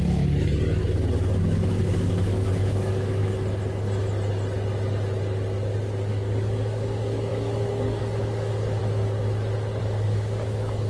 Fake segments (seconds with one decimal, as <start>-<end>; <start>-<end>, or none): 0.0-0.8; 1.4-3.3; 6.1-8.8; 9.8-10.9